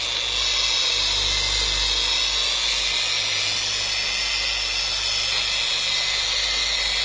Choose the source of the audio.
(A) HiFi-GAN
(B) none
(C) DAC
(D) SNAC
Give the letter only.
B